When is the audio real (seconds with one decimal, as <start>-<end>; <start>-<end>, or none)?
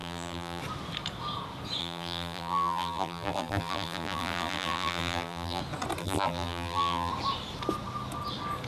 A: 0.6-1.8; 5.6-6.0; 7.1-8.7